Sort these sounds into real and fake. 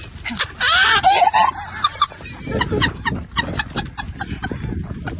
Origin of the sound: real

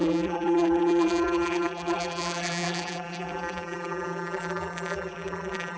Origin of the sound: fake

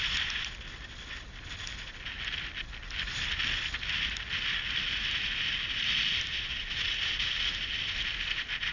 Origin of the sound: real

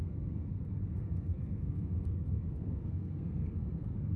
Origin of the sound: fake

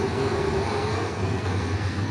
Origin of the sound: fake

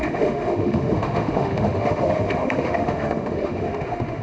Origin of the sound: fake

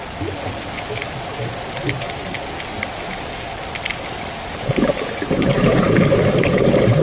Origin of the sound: real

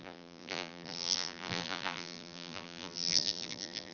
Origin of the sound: fake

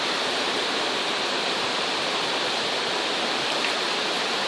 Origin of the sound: real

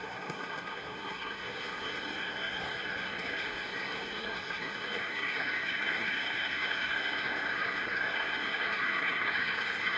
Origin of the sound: fake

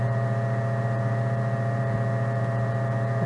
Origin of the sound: fake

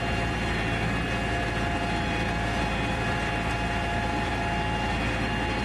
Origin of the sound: real